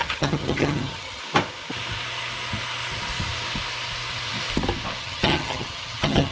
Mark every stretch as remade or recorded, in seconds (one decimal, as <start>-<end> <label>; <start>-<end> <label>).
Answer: 0.0-1.2 remade; 1.2-5.0 recorded; 5.0-6.3 remade